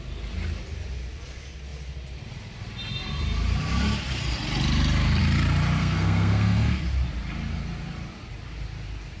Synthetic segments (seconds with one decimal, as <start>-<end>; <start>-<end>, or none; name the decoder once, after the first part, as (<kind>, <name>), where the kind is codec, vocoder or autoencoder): 5.8-6.8 (codec, SNAC)